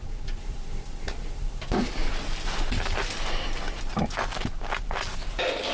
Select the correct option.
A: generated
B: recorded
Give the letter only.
B